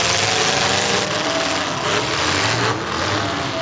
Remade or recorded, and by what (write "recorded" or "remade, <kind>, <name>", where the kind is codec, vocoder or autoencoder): recorded